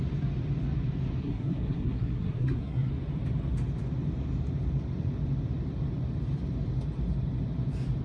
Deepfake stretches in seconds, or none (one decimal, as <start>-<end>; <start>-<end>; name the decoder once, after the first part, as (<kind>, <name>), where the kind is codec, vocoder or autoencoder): 1.2-2.9 (codec, SNAC)